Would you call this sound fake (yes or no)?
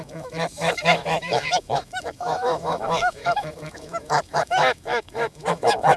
yes